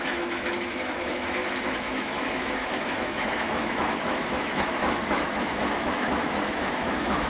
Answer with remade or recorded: remade